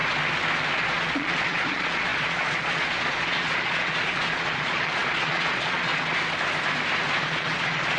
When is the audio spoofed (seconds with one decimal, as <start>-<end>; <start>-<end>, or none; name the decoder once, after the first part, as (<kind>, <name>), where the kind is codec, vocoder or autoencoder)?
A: 0.7-5.9 (vocoder, Vocos); 7.2-8.0